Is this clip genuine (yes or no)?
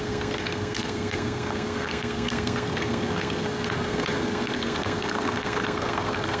no